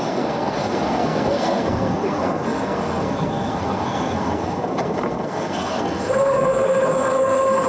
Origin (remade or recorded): remade